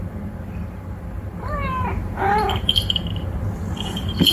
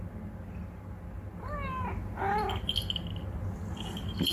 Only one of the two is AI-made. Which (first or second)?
first